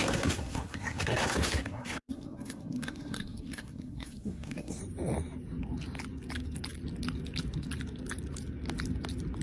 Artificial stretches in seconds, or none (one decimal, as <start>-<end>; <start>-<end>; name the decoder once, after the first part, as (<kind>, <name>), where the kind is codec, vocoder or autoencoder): 0.0-4.8 (codec, SNAC)